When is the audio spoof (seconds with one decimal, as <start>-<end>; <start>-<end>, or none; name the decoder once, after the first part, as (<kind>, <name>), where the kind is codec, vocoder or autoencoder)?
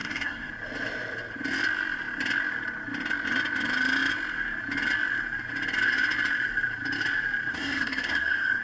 0.0-0.5 (codec, SNAC); 7.5-8.6